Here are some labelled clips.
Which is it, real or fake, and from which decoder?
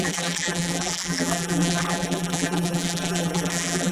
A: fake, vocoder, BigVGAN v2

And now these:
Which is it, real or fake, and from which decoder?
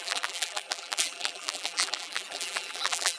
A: fake, vocoder, BigVGAN v2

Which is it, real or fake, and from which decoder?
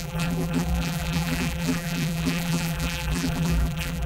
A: fake, vocoder, BigVGAN v2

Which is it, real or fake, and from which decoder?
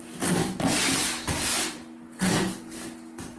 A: real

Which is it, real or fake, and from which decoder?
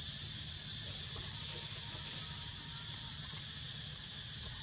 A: real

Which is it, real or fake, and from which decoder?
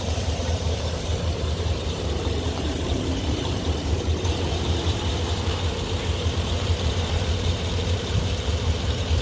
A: fake, vocoder, BigVGAN v2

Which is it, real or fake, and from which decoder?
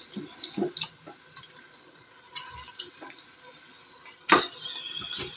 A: real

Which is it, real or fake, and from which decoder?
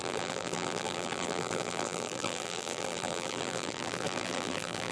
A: fake, vocoder, BigVGAN v2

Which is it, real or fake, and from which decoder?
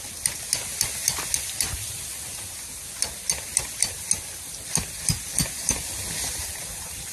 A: real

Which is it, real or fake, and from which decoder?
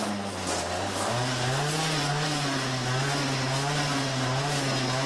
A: real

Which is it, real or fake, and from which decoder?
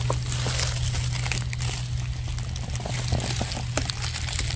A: real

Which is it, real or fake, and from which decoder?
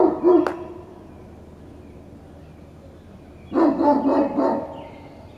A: real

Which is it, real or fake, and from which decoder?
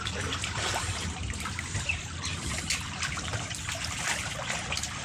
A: fake, vocoder, BigVGAN v2